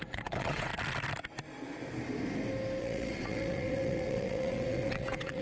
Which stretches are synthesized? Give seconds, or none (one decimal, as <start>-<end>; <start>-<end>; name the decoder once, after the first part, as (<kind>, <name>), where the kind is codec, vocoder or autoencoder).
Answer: 0.0-0.7 (vocoder, WaveNeXt); 2.8-5.4